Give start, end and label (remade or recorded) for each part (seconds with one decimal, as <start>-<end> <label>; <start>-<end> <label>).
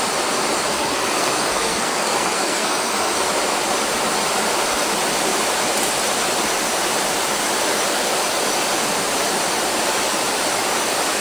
0.0-0.6 recorded; 0.6-3.3 remade; 3.3-11.2 recorded